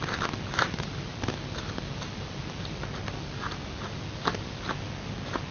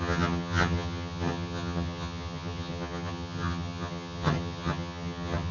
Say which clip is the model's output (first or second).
second